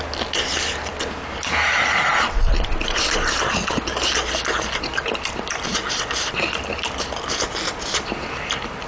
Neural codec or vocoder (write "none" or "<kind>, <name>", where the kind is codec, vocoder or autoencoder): none